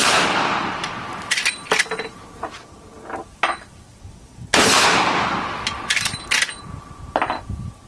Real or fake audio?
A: real